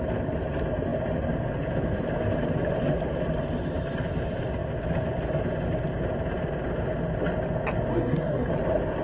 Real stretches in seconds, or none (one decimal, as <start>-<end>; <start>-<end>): 0.0-7.9; 8.5-9.0